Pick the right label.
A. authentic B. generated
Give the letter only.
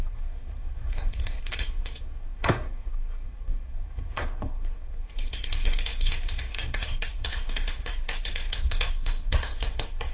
B